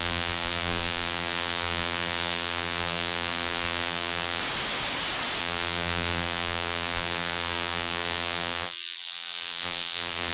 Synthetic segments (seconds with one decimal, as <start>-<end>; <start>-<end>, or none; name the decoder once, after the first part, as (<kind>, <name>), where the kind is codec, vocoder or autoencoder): 0.0-4.4 (vocoder, BigVGAN v2); 5.4-10.3